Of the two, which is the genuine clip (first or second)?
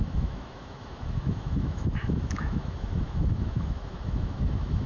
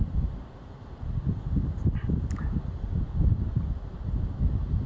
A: second